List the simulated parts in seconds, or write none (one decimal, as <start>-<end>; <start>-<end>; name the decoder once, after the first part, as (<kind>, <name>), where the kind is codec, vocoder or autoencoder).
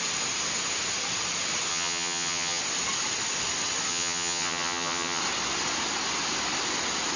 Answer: 1.7-2.6 (vocoder, HiFi-GAN); 3.9-5.2